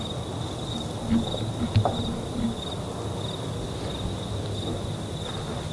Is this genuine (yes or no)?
yes